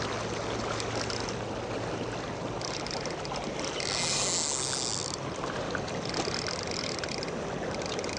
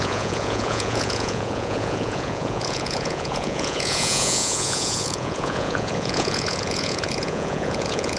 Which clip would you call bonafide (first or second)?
first